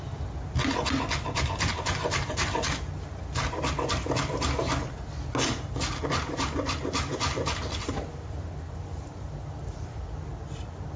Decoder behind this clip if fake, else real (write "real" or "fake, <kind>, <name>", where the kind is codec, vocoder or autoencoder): real